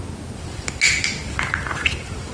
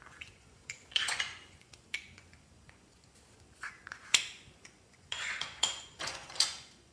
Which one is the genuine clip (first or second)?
first